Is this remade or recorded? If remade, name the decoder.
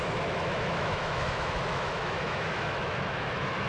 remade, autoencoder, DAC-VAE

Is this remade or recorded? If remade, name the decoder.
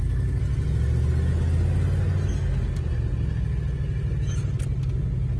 recorded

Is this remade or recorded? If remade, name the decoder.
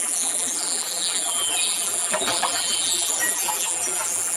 remade, vocoder, BigVGAN v2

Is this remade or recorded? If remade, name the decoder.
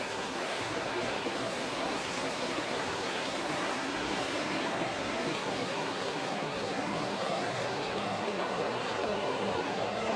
remade, codec, SNAC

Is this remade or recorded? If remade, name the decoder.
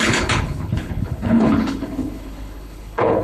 remade, codec, HILCodec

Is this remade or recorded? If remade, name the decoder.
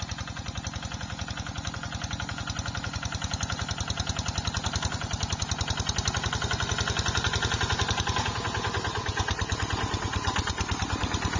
recorded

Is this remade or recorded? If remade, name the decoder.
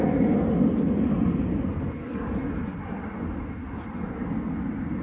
recorded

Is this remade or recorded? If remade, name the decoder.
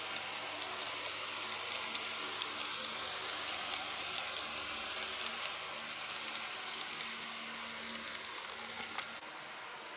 recorded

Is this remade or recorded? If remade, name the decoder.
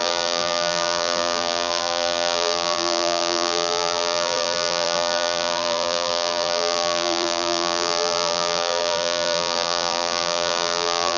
remade, vocoder, BigVGAN v2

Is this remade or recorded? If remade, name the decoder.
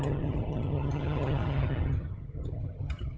remade, vocoder, HiFi-GAN